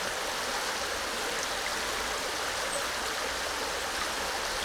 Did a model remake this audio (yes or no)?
no